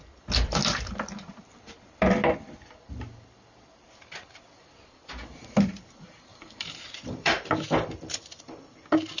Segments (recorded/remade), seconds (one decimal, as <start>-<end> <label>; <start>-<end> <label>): 0.0-6.3 recorded; 6.3-7.5 remade; 7.5-9.2 recorded